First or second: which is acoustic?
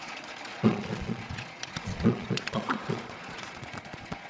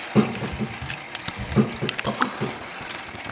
second